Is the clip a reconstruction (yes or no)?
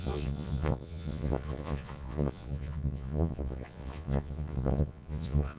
yes